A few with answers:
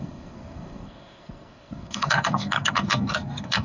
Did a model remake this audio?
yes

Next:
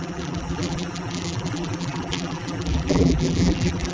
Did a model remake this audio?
yes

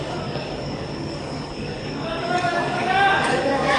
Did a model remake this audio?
yes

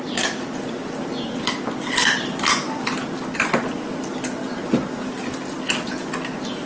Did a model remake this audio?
no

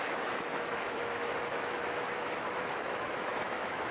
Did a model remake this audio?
yes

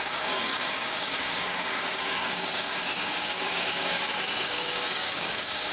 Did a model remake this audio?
yes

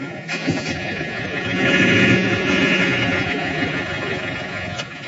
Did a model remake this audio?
yes